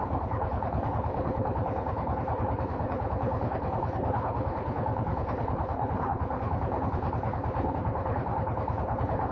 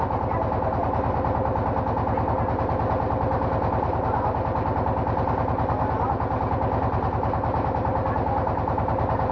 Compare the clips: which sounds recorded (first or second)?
second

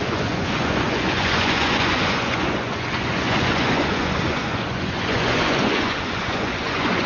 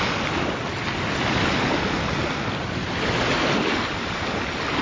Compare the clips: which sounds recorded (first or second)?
second